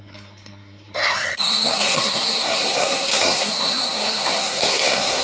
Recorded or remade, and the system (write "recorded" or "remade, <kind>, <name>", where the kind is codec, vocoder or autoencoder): remade, codec, SNAC